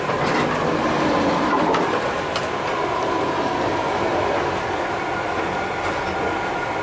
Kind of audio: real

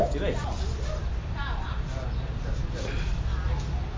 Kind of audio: real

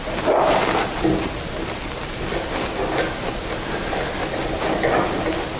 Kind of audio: real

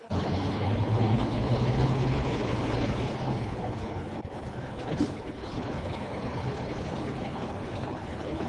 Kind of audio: fake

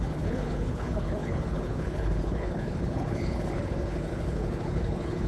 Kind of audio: fake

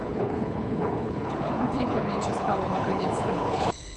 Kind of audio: fake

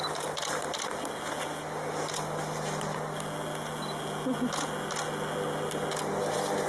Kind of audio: real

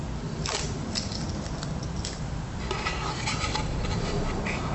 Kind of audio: real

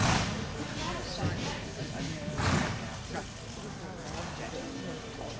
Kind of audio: real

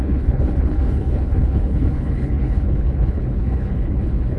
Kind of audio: fake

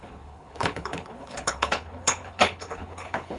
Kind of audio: fake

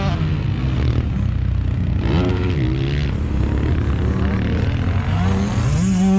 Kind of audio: real